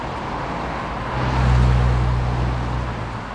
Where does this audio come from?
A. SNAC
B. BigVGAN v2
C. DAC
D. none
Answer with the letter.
D